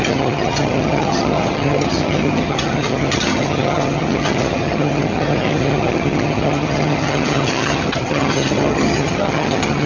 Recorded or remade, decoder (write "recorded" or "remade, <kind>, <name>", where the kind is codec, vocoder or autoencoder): remade, vocoder, HiFi-GAN